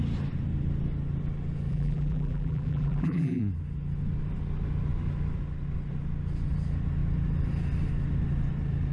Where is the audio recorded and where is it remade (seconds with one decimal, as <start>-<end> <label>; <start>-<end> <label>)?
0.0-1.7 recorded; 1.7-3.4 remade; 3.4-8.9 recorded

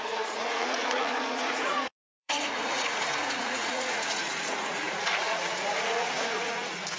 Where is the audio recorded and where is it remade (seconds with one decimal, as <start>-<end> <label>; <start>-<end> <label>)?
0.0-7.0 remade

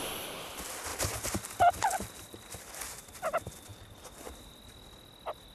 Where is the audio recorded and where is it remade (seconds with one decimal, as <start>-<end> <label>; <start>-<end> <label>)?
0.0-5.5 recorded

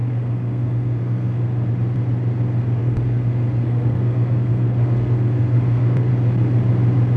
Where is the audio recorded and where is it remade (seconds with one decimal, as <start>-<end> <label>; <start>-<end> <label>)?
0.0-1.7 remade; 1.7-2.8 recorded; 2.8-6.1 remade; 6.1-7.2 recorded

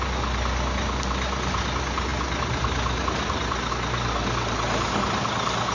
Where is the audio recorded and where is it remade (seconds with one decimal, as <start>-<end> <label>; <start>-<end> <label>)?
0.0-5.7 recorded

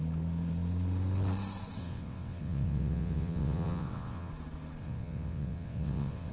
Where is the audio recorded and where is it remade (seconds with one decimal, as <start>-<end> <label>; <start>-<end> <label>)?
0.0-1.8 recorded; 1.8-4.3 remade; 4.3-4.8 recorded; 4.8-6.3 remade

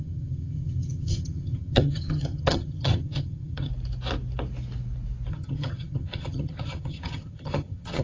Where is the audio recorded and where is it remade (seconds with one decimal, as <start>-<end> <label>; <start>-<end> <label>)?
0.0-3.7 remade; 3.7-5.3 recorded; 5.3-8.0 remade

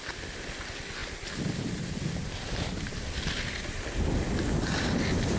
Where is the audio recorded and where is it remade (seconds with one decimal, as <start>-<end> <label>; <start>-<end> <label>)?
0.0-1.0 recorded; 1.0-3.8 remade; 3.8-5.4 recorded